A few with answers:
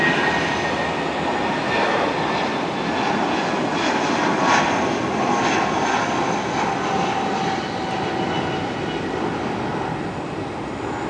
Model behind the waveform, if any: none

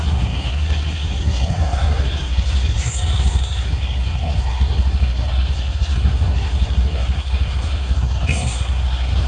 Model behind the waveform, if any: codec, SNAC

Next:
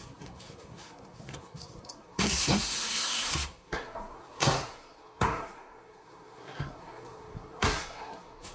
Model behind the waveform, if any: codec, SNAC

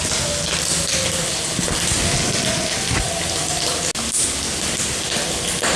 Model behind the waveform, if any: none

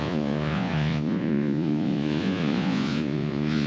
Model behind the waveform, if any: vocoder, Vocos